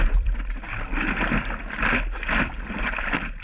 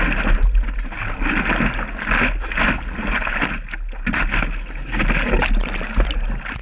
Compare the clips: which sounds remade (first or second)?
first